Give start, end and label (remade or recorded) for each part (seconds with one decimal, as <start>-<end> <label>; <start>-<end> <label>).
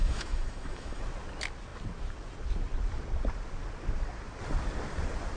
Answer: 0.0-1.0 remade; 1.0-5.4 recorded